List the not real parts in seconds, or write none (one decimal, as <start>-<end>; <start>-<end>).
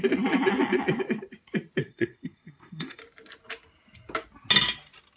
1.8-3.0